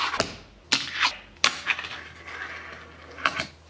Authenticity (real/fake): real